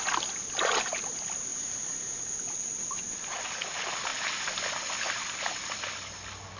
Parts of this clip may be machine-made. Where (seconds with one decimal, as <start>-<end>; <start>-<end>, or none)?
1.5-2.2